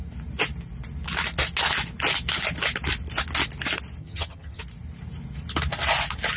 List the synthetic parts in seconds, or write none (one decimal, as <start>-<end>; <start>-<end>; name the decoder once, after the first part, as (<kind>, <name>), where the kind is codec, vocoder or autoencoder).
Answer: 4.0-4.6 (vocoder, HiFi-GAN)